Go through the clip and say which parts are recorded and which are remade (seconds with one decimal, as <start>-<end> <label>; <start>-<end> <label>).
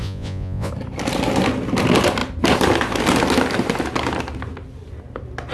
0.0-0.7 remade; 0.7-5.5 recorded